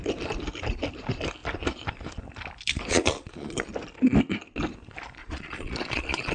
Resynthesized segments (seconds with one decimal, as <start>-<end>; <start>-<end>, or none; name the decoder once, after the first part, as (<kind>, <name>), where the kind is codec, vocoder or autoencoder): 2.9-3.7 (vocoder, Vocos); 5.2-6.3